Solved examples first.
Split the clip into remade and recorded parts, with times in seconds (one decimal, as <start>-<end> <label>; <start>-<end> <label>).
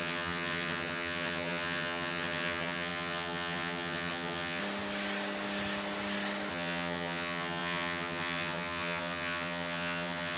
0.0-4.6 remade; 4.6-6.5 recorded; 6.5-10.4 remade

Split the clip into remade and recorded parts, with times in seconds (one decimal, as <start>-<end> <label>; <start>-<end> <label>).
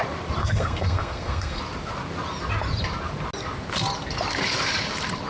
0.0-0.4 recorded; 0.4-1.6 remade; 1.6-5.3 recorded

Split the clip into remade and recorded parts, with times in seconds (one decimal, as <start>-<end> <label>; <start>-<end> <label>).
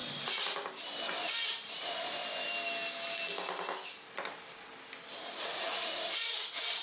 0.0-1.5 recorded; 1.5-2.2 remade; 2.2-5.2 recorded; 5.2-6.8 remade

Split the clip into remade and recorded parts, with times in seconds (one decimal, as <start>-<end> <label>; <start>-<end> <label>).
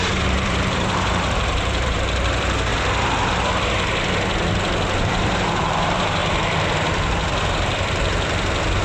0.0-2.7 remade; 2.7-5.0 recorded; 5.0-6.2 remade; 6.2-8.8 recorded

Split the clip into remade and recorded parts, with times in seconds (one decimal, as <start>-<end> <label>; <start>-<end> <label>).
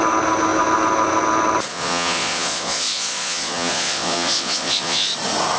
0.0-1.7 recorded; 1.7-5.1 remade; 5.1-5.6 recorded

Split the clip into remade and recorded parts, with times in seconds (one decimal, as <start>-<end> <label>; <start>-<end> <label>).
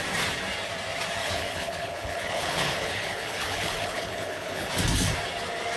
0.0-1.2 recorded; 1.2-4.7 remade; 4.7-5.8 recorded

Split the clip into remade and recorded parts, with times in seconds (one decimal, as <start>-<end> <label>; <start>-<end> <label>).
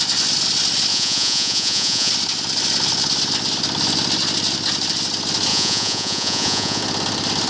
0.0-0.9 recorded; 0.9-2.1 remade; 2.1-5.5 recorded; 5.5-6.8 remade; 6.8-7.5 recorded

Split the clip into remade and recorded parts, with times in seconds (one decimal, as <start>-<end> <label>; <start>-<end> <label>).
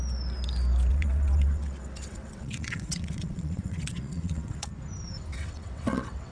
0.0-0.9 recorded; 0.9-4.7 remade; 4.7-5.3 recorded; 5.3-6.3 remade